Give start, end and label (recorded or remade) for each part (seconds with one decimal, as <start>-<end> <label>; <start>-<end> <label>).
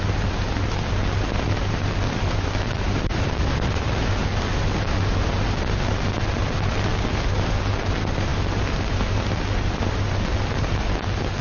0.0-11.4 recorded